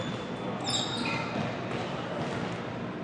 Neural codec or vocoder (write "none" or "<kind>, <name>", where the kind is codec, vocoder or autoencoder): none